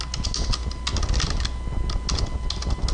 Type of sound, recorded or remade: recorded